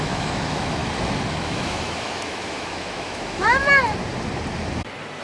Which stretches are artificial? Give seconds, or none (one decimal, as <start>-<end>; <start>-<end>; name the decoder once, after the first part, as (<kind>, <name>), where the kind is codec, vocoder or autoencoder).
0.0-0.8 (autoencoder, DAC-VAE); 1.3-3.6